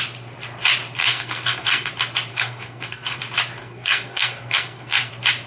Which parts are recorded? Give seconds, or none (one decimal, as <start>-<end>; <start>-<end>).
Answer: 0.0-1.0; 1.9-2.3; 3.2-3.6; 5.1-5.5